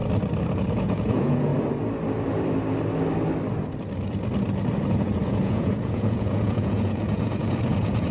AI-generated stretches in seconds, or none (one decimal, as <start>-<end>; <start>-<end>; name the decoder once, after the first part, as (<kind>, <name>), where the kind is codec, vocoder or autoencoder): 0.5-1.5 (vocoder, Vocos); 4.9-8.1